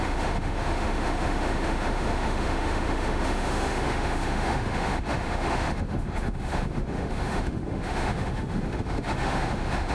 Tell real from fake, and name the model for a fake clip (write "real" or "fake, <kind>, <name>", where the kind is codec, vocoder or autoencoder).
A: fake, autoencoder, DAC-VAE